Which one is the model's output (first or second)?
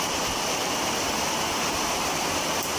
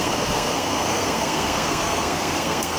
second